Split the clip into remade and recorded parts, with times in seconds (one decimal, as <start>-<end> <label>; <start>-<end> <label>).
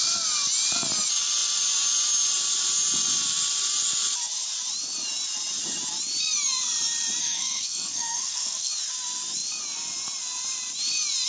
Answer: 0.0-7.2 recorded; 7.2-8.7 remade; 8.7-11.3 recorded